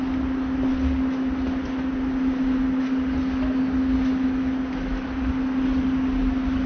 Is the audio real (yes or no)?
yes